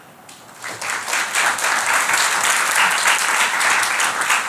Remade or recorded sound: recorded